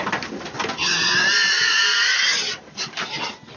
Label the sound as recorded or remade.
recorded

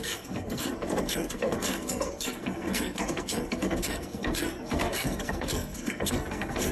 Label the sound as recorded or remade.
remade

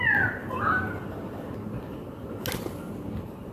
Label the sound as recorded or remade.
recorded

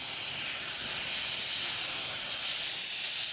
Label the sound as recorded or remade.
recorded